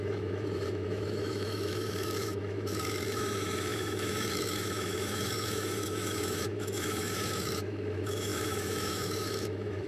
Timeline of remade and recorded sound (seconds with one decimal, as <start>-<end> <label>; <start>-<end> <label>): 0.0-9.9 remade